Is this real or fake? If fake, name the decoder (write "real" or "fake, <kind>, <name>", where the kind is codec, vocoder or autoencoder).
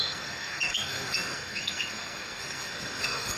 fake, codec, SNAC